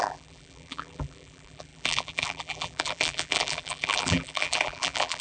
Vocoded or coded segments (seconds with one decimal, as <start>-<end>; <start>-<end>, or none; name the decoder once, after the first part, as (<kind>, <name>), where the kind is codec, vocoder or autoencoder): 0.0-5.2 (vocoder, BigVGAN v2)